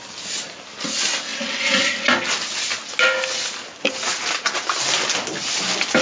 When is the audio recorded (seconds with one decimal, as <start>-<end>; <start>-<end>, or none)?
0.0-6.0